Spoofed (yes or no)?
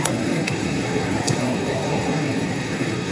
yes